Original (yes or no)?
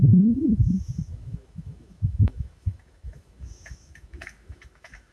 no